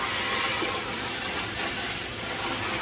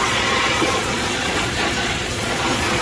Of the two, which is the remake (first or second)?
second